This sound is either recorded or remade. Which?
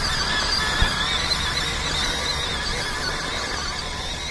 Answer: recorded